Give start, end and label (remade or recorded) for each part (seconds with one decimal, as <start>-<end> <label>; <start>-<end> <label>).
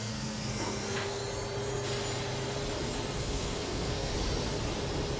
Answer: 0.0-1.2 remade; 1.2-3.2 recorded; 3.2-4.1 remade; 4.1-5.2 recorded